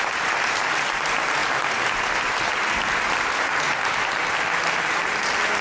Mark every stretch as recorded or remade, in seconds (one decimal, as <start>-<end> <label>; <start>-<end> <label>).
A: 0.0-5.6 recorded